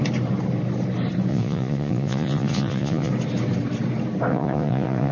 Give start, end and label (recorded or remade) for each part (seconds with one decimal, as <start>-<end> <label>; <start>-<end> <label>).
0.0-1.3 recorded; 1.3-3.1 remade; 3.1-4.3 recorded; 4.3-5.1 remade